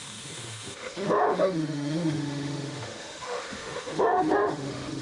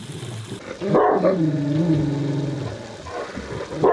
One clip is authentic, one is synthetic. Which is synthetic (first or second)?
first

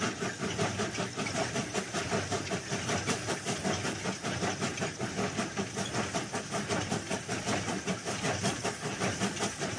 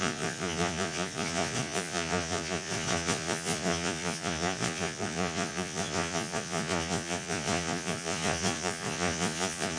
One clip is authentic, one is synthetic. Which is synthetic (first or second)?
second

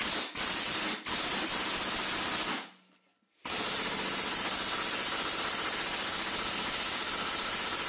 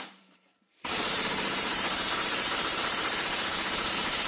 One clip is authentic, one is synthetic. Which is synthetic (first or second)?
second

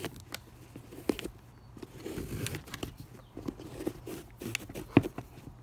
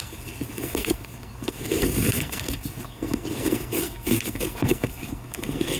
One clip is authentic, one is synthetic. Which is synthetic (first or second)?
second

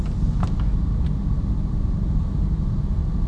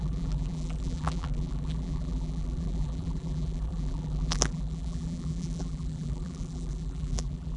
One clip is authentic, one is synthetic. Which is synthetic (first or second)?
second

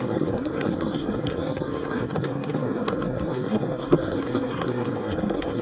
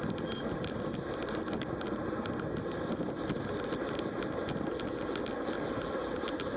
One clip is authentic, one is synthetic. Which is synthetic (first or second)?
first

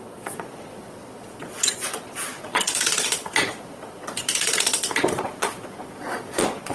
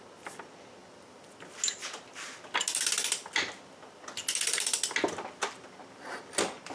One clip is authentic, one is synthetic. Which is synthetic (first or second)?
first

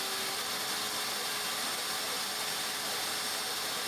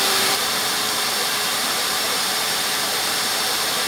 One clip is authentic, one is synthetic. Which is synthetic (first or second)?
second